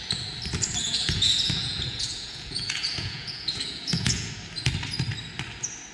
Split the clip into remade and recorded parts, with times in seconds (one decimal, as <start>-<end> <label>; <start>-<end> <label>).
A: 0.0-0.8 recorded; 0.8-4.3 remade; 4.3-5.9 recorded